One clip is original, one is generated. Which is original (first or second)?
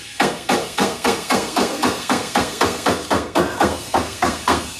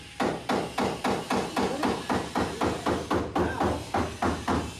second